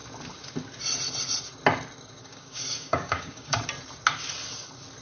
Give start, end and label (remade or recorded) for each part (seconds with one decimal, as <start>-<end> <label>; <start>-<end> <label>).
0.0-2.2 recorded; 2.2-3.6 remade; 3.6-5.0 recorded